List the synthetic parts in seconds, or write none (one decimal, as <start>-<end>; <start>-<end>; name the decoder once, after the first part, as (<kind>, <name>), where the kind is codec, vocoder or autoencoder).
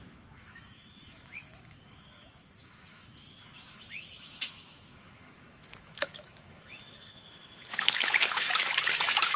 0.0-9.4 (autoencoder, DAC-VAE)